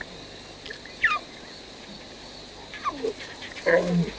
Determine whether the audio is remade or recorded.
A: recorded